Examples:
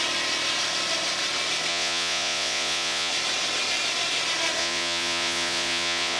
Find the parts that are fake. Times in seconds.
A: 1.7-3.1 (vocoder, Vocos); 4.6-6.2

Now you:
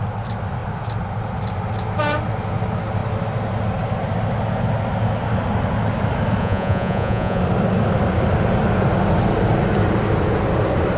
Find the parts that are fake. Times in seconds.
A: 6.4-7.4 (vocoder, Vocos)

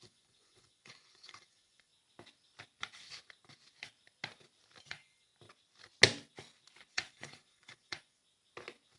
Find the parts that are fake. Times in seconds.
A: 0.0-1.9 (vocoder, Vocos); 4.8-5.3; 6.9-8.2

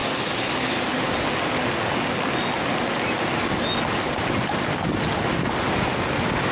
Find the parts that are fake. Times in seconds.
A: none

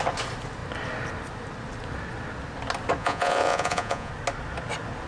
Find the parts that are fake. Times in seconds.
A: 3.0-4.1 (vocoder, Vocos)

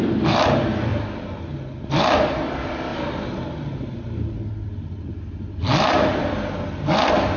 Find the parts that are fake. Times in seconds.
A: none